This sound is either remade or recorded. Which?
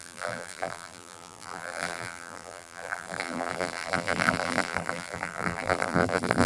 remade